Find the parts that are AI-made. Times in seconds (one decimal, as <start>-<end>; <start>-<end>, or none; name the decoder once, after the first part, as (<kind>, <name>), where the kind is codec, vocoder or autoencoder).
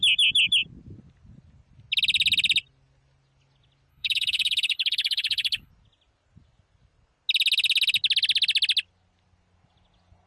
3.9-5.7 (codec, HILCodec)